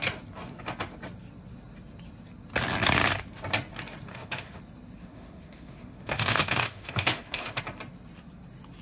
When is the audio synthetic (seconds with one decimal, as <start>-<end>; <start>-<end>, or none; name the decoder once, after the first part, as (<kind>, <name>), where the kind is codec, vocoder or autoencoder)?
4.1-4.6 (autoencoder, DAC-VAE); 5.0-7.6